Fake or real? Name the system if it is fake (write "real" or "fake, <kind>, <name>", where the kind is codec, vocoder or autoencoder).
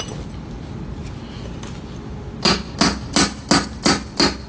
real